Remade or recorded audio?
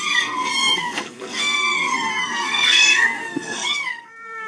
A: remade